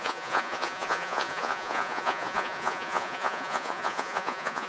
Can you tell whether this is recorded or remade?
remade